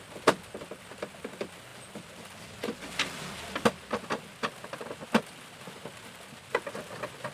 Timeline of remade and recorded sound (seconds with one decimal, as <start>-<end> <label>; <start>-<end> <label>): 0.0-7.3 recorded

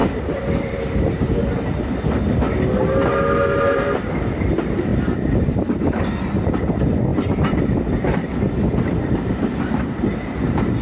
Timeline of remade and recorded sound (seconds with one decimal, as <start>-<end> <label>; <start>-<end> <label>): 0.0-1.8 remade; 1.8-7.1 recorded; 7.1-9.1 remade; 9.1-10.8 recorded

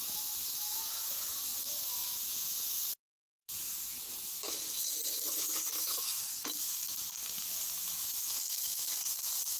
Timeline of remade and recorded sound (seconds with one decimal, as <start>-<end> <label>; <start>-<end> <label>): 0.0-9.6 remade

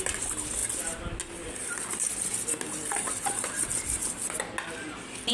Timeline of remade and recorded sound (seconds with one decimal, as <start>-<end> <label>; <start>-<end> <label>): 0.0-5.3 recorded